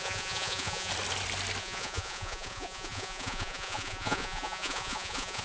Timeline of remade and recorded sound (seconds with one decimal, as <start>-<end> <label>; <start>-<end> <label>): 0.0-0.9 remade; 0.9-1.6 recorded; 1.6-5.4 remade

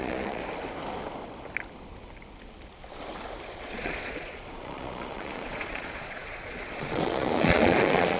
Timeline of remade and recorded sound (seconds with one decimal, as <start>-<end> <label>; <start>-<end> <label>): 0.0-0.4 remade; 0.4-3.5 recorded; 3.5-8.2 remade

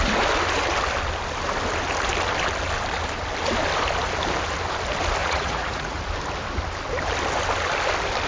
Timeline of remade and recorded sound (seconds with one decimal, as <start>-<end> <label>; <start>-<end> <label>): 0.0-5.2 recorded; 5.2-6.0 remade; 6.0-8.3 recorded

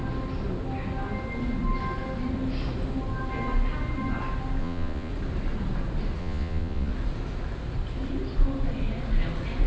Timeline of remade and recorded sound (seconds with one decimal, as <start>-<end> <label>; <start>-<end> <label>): 0.0-4.6 recorded; 4.6-5.1 remade; 5.1-6.2 recorded; 6.2-6.9 remade; 6.9-9.7 recorded